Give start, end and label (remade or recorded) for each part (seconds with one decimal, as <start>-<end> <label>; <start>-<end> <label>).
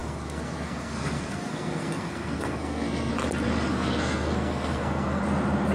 0.0-3.1 remade; 3.1-3.7 recorded; 3.7-5.2 remade; 5.2-5.7 recorded